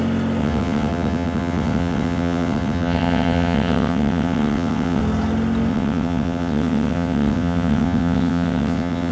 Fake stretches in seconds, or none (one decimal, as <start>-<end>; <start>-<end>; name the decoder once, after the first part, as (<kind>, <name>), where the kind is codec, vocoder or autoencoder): 0.4-5.0 (vocoder, WaveNeXt); 5.7-9.1